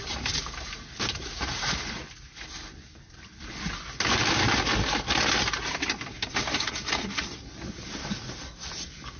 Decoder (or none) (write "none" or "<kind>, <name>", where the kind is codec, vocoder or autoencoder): none